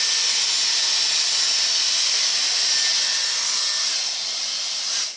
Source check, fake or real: real